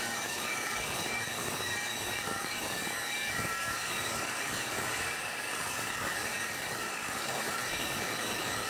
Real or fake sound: fake